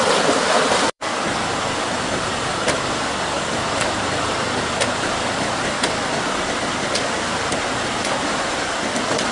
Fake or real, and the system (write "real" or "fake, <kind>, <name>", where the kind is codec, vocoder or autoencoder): fake, vocoder, BigVGAN v2